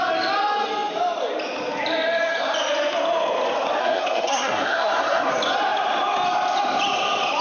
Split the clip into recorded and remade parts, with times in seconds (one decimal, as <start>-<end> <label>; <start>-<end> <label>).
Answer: 0.0-3.8 recorded; 3.8-5.3 remade; 5.3-7.4 recorded